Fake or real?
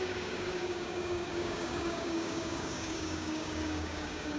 fake